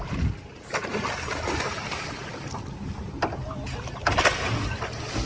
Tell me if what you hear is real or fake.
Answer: real